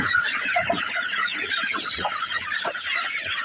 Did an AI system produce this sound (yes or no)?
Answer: yes